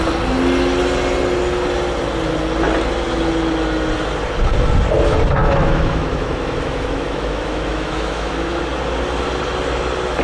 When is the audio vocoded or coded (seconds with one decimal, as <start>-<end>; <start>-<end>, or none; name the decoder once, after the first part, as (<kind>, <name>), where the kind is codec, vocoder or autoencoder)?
5.4-8.6 (autoencoder, DAC-VAE)